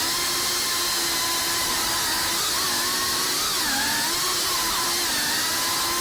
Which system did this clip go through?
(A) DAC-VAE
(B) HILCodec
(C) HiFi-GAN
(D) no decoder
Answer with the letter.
D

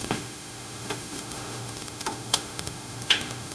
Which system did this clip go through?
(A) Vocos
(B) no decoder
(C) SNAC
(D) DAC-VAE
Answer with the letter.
D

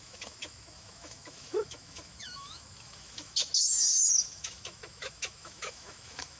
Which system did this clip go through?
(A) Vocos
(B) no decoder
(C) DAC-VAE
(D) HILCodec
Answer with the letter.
C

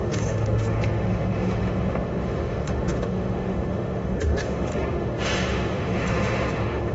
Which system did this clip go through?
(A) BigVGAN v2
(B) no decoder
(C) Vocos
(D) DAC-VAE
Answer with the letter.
D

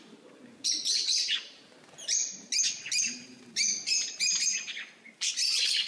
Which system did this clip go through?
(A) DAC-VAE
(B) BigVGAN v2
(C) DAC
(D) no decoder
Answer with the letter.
D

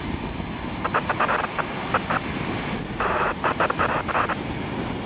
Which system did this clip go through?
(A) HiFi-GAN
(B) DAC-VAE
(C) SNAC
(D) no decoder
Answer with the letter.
D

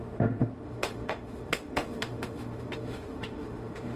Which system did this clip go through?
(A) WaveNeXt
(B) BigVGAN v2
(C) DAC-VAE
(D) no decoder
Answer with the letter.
C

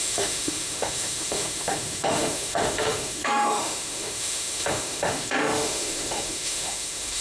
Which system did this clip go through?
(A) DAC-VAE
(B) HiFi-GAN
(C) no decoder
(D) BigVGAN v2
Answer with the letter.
A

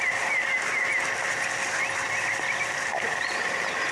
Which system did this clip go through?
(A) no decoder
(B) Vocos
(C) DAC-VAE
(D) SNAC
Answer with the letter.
A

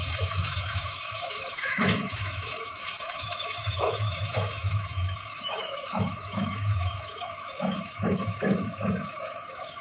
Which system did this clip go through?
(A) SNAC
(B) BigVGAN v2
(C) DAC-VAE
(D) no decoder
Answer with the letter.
C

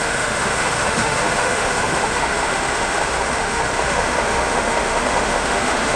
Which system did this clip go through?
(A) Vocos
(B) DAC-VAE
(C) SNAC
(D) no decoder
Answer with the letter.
B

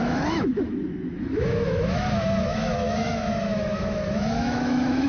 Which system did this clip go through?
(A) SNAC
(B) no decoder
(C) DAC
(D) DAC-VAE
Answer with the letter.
D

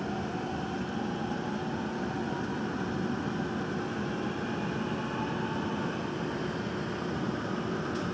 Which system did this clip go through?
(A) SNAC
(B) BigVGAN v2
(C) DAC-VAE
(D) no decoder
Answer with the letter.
D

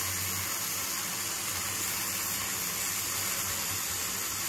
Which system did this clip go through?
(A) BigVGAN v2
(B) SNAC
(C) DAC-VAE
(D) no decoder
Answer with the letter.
D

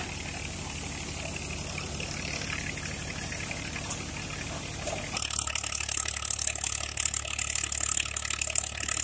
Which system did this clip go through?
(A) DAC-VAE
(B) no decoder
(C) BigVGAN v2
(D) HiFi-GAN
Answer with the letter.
B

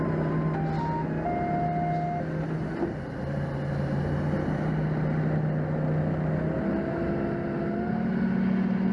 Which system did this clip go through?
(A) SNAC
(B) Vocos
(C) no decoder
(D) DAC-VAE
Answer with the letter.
C